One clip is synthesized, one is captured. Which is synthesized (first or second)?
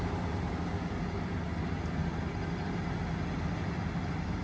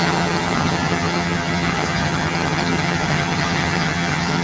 second